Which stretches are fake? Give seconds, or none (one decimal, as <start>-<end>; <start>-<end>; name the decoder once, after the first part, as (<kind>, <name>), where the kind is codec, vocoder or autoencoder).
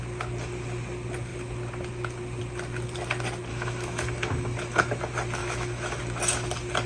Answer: 3.5-5.0 (autoencoder, DAC-VAE); 5.4-6.0